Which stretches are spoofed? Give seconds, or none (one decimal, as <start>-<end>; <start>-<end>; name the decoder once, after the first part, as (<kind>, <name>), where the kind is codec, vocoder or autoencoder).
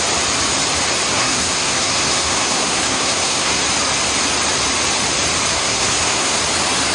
1.1-3.6 (codec, SNAC); 5.5-6.4